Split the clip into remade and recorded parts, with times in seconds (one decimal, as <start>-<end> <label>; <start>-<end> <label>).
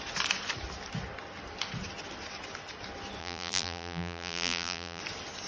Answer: 0.0-3.2 recorded; 3.2-5.0 remade; 5.0-5.5 recorded